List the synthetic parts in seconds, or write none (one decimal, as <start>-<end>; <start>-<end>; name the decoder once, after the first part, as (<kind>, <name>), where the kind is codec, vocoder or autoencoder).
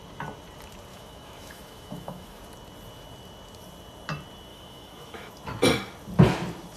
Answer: 0.9-2.4 (autoencoder, DAC-VAE); 4.5-5.3